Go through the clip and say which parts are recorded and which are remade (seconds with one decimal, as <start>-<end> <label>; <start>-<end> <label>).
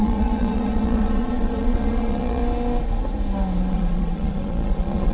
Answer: 0.0-2.4 remade; 2.4-3.7 recorded; 3.7-5.1 remade